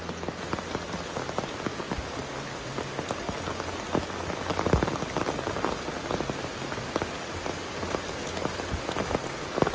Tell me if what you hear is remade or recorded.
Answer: recorded